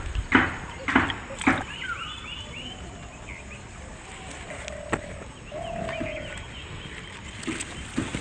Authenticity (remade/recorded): recorded